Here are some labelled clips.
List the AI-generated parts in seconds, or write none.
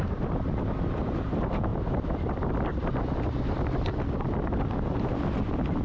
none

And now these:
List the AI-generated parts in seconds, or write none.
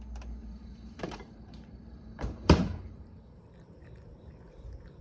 0.4-3.4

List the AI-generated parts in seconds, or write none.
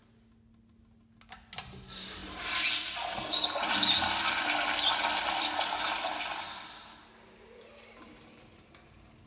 none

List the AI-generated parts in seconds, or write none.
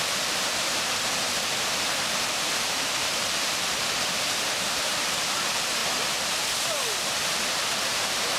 0.0-5.8; 7.3-8.4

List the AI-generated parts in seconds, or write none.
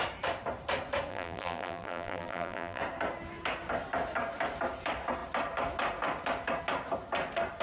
1.1-2.8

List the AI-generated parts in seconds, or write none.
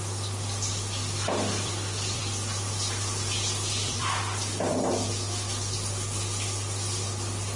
0.7-5.1